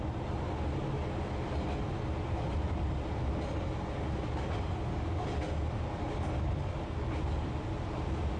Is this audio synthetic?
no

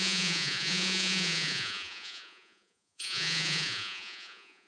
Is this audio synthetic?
yes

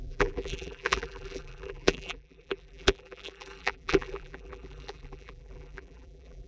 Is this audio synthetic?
yes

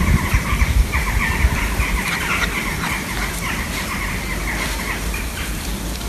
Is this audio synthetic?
yes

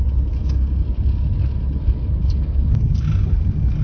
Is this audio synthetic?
no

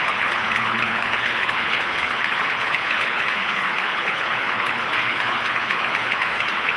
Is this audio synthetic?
yes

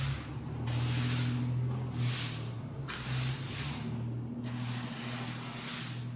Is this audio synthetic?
no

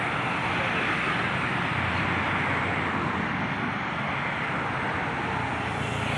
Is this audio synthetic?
no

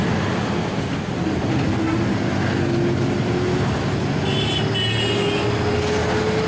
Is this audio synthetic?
no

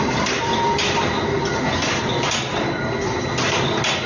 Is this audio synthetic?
no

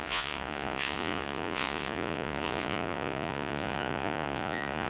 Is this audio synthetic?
yes